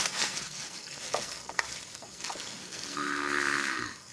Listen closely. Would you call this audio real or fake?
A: fake